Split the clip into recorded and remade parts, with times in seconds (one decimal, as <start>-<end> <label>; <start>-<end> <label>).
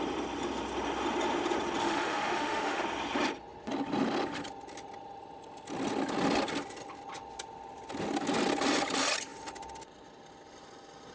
0.0-1.8 recorded; 1.8-2.8 remade; 2.8-11.1 recorded